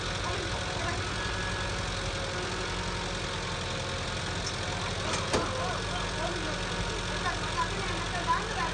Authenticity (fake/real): real